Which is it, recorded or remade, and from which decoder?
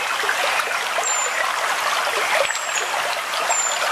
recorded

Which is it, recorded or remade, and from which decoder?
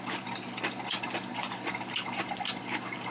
recorded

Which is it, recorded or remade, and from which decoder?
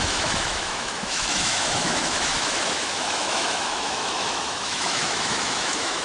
remade, autoencoder, DAC-VAE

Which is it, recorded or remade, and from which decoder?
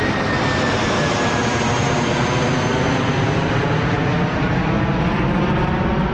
recorded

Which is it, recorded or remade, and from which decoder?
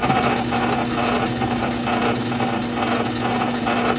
recorded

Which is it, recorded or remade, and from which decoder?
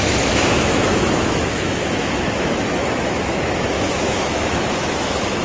remade, autoencoder, DAC-VAE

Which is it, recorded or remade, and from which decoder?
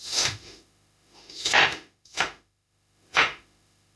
remade, autoencoder, DAC-VAE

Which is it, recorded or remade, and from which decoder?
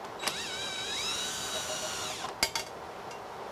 recorded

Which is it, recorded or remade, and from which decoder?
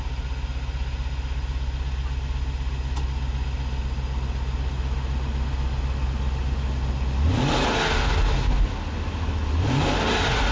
recorded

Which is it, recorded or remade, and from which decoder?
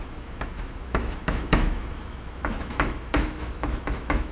remade, autoencoder, DAC-VAE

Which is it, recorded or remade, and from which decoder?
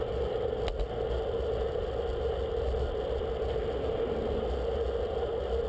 recorded